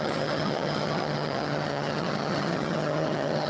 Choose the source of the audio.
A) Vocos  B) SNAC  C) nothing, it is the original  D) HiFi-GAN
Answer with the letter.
D